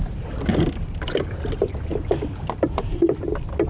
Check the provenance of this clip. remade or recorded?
recorded